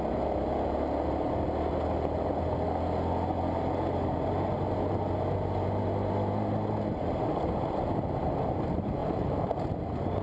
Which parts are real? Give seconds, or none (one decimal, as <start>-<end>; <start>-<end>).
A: 0.0-9.0; 9.5-10.2